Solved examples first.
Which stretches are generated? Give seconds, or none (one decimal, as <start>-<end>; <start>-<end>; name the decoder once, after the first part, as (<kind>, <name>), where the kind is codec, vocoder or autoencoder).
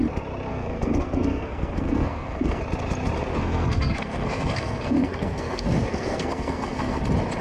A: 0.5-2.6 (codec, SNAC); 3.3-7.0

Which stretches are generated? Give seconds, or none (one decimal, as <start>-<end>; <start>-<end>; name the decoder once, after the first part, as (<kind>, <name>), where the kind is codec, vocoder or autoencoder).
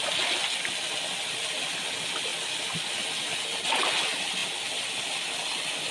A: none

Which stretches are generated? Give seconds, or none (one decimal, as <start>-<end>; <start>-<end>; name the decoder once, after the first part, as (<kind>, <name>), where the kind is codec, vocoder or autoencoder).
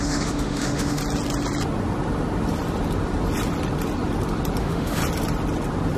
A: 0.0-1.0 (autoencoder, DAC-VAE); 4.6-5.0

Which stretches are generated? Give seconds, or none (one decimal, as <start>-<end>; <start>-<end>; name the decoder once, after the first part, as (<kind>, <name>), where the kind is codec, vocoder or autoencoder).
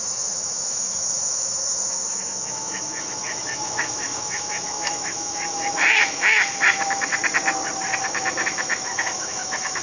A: 0.0-7.2 (autoencoder, DAC-VAE); 8.0-9.8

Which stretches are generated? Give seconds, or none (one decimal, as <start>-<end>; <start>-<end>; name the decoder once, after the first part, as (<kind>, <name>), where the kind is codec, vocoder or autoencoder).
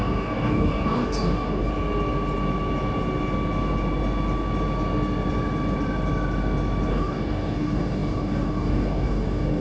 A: 0.0-1.7 (codec, DAC); 6.9-9.6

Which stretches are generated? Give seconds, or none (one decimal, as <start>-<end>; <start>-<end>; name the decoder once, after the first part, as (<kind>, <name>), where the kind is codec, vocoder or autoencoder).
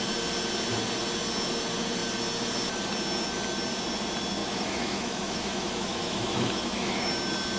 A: 4.4-7.1 (autoencoder, DAC-VAE)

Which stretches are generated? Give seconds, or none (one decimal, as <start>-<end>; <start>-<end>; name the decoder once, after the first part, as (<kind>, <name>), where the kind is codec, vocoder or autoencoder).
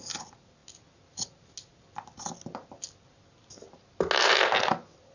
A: none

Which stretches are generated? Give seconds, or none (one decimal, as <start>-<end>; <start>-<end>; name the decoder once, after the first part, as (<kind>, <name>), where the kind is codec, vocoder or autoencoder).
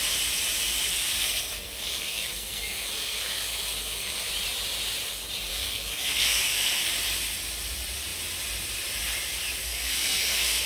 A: 0.9-4.3 (codec, SNAC); 5.5-6.9; 9.6-10.7